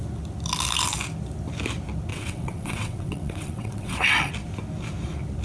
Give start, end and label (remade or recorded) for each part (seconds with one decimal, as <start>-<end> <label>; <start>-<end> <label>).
0.0-2.1 recorded; 2.1-4.3 remade; 4.3-5.4 recorded

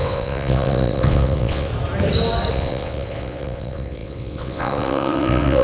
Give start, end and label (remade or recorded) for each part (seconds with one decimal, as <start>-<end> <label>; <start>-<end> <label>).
0.0-1.7 remade; 1.7-2.5 recorded; 2.5-5.6 remade

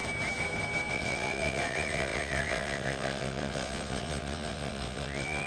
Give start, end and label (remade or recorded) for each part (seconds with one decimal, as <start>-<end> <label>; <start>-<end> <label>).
0.0-0.9 recorded; 0.9-5.5 remade

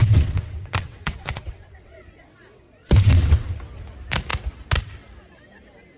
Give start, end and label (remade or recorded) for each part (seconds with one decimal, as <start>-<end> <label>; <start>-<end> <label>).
0.0-3.6 remade; 3.6-6.0 recorded

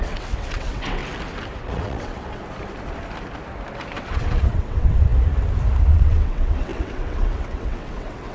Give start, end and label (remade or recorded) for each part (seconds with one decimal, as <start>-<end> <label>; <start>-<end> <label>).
0.0-1.0 remade; 1.0-1.6 recorded; 1.6-2.4 remade; 2.4-4.0 recorded; 4.0-5.1 remade; 5.1-5.9 recorded; 5.9-8.3 remade